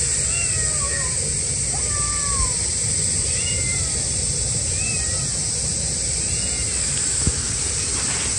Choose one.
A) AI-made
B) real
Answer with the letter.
B